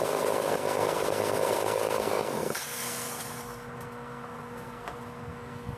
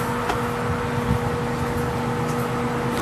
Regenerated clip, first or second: first